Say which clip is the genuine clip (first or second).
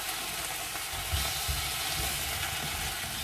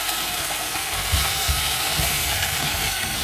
first